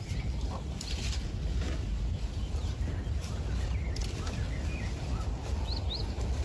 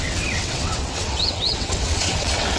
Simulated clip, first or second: second